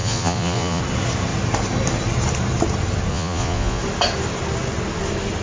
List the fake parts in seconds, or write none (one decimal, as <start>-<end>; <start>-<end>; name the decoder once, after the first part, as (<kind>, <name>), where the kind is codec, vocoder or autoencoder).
0.0-0.8 (vocoder, Vocos); 3.1-3.8